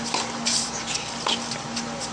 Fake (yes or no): no